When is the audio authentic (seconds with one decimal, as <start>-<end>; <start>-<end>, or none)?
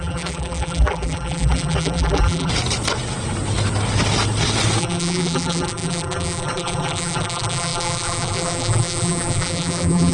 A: 2.5-4.8